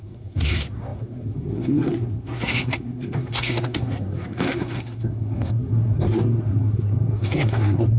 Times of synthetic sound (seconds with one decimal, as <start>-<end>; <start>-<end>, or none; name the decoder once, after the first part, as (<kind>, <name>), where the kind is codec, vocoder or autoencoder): 0.0-8.0 (codec, SNAC)